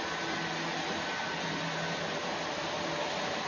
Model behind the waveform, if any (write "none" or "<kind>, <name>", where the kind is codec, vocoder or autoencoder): none